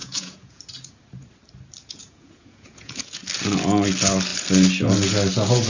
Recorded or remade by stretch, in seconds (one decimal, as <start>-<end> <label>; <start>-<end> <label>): 0.0-0.6 remade; 0.6-1.8 recorded; 1.8-3.2 remade; 3.2-5.7 recorded